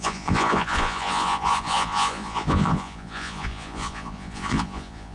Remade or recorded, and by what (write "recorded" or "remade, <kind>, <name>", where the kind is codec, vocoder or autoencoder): remade, vocoder, Vocos